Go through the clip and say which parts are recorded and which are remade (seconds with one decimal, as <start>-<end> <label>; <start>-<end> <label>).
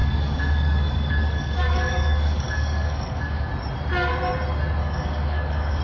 0.0-3.5 remade; 3.5-4.8 recorded; 4.8-5.8 remade